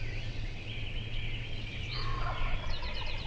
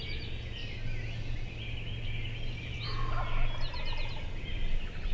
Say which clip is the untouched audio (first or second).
second